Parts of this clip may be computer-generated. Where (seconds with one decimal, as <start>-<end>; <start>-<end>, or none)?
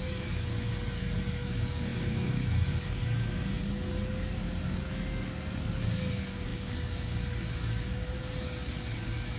0.0-9.4